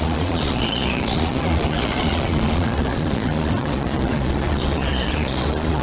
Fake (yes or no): yes